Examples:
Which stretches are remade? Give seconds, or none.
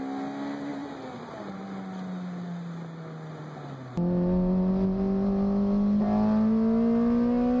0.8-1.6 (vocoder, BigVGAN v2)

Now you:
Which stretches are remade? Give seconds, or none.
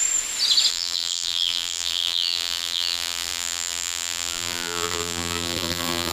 0.7-6.1 (vocoder, BigVGAN v2)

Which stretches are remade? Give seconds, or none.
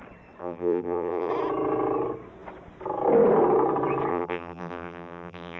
0.4-1.3 (vocoder, BigVGAN v2); 4.1-5.6